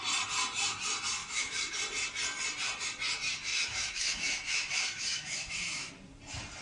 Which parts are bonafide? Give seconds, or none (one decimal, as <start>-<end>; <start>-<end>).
0.0-1.2; 1.7-3.5; 5.9-6.6